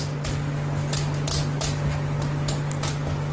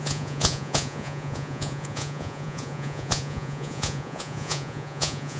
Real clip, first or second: first